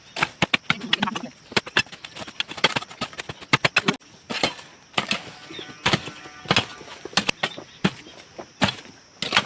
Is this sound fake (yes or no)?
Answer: no